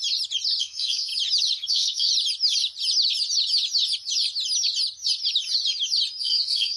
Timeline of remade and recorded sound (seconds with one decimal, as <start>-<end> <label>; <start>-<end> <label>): 0.0-0.6 recorded; 0.6-1.1 remade; 1.1-1.7 recorded; 1.7-2.1 remade; 2.1-6.2 recorded; 6.2-6.8 remade